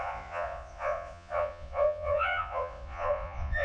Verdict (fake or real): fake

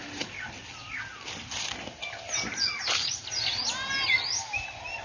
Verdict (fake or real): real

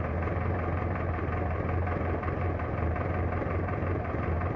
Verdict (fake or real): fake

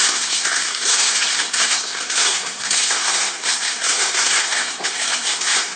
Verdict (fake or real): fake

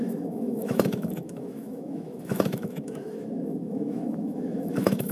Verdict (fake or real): fake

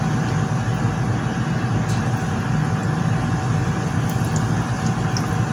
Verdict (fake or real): real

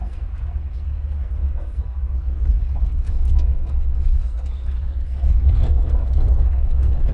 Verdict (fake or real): fake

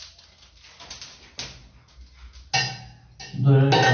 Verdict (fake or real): real